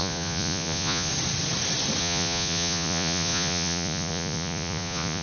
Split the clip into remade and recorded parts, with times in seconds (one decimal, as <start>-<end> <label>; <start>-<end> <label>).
0.0-1.1 remade; 1.1-2.0 recorded; 2.0-5.2 remade